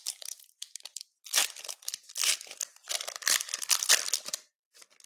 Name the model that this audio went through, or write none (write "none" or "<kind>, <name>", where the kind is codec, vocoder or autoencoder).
none